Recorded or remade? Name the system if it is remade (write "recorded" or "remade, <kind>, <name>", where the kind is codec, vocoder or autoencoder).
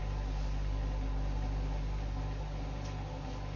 recorded